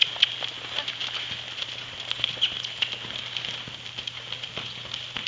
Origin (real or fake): real